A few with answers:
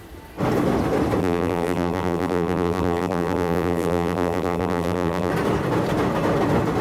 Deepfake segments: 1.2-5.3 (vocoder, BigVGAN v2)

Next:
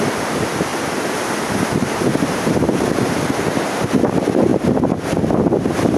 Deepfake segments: 0.7-3.9 (vocoder, BigVGAN v2); 4.5-6.0